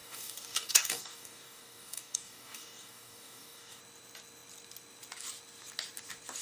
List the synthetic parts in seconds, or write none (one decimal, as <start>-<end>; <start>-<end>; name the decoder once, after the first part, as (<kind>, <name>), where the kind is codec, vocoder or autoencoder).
0.0-3.8 (codec, DAC)